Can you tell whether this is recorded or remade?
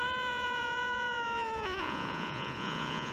remade